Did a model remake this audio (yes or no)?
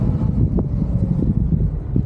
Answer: yes